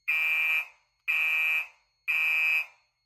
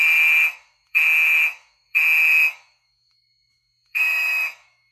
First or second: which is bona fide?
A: first